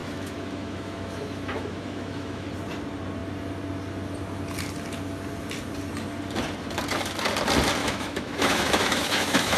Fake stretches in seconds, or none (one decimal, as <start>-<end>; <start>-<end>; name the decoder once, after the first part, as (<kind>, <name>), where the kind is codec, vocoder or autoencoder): 0.0-2.5 (autoencoder, DAC-VAE); 7.8-9.6